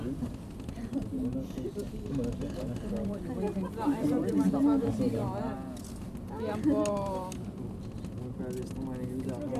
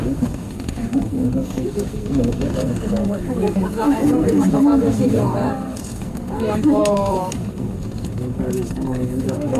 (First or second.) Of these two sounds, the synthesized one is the second